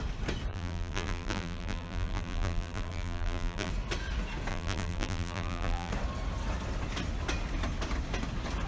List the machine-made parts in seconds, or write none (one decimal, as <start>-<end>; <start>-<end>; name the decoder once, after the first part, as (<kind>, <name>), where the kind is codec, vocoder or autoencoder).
0.5-3.7 (vocoder, BigVGAN v2); 4.5-5.9